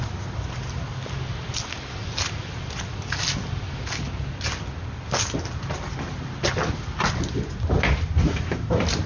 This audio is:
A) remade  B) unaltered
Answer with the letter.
B